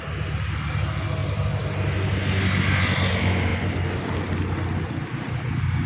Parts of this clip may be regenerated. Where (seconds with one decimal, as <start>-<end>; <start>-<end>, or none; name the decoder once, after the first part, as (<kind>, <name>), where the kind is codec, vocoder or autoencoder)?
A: 1.2-1.7 (vocoder, BigVGAN v2)